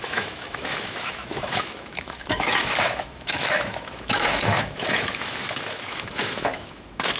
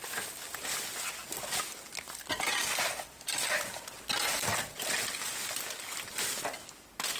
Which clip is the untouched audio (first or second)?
second